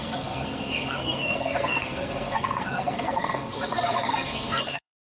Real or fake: fake